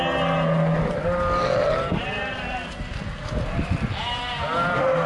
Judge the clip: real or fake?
real